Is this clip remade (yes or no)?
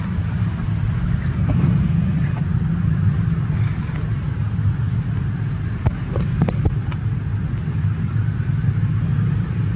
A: no